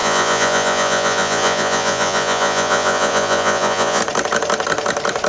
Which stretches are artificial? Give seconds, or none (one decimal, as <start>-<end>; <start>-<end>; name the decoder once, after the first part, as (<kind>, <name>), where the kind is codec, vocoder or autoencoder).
0.0-4.0 (vocoder, Vocos)